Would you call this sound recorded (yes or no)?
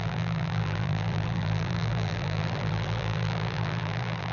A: no